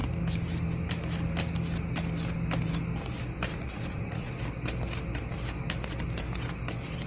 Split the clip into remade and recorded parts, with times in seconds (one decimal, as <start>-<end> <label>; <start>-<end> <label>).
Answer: 0.0-3.5 recorded; 3.5-4.3 remade; 4.3-7.1 recorded